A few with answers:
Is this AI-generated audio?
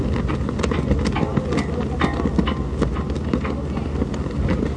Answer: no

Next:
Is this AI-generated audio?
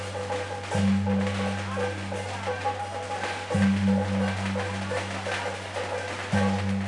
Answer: no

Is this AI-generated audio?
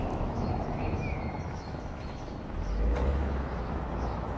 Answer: yes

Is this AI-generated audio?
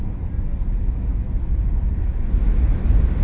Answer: no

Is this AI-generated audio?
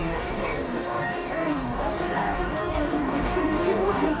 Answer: yes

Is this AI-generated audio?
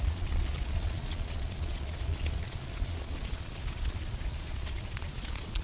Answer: yes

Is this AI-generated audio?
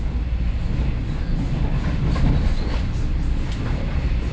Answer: no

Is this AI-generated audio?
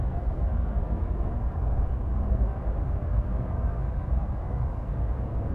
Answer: yes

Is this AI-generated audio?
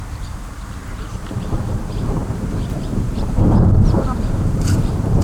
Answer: yes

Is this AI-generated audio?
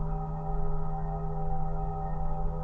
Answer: yes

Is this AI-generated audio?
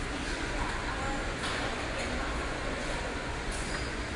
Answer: yes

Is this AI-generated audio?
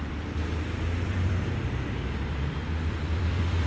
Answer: yes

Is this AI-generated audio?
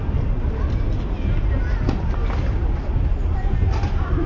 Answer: no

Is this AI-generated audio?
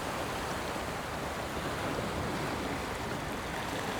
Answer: no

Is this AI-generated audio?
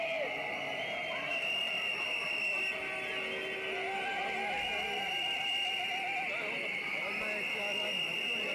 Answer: no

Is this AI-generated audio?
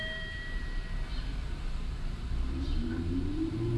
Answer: yes